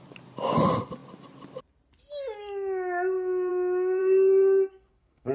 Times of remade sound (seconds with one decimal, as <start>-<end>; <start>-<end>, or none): 4.0-5.3